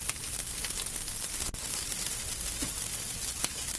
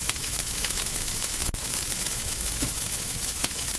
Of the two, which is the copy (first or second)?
second